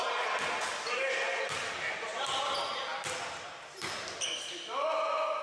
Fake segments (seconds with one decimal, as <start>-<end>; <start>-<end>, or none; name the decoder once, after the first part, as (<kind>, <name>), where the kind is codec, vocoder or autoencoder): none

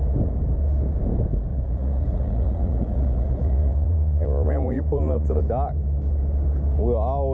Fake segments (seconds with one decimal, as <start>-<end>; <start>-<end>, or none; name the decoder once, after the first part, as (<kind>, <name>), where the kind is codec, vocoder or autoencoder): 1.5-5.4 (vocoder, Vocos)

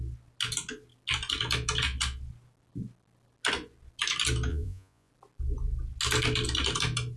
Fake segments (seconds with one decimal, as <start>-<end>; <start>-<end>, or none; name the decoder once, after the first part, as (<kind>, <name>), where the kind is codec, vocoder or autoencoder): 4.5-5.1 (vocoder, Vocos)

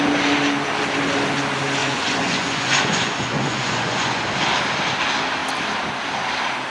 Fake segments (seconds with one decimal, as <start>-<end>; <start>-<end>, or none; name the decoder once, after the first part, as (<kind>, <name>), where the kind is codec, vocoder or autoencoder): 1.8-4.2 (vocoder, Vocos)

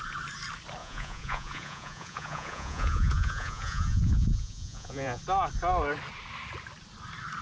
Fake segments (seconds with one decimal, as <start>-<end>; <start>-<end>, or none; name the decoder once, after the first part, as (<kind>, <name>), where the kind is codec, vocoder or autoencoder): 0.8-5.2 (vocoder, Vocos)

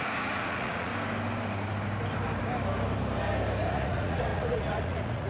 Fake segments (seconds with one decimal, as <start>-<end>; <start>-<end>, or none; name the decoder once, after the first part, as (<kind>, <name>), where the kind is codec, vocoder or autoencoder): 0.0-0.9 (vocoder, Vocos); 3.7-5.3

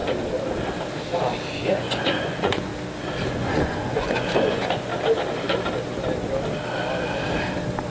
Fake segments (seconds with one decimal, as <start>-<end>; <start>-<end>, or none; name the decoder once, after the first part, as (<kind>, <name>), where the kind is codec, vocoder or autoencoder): 1.5-2.7 (vocoder, Vocos); 3.3-4.9

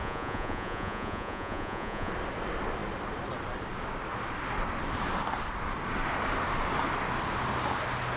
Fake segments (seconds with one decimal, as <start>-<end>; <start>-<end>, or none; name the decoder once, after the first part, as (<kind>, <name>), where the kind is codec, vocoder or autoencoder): 0.0-2.1 (vocoder, Vocos)